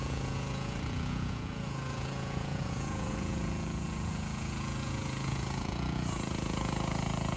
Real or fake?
fake